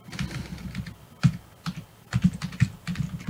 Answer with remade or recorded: recorded